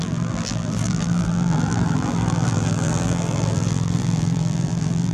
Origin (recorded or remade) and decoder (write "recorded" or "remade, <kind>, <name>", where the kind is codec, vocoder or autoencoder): remade, vocoder, BigVGAN v2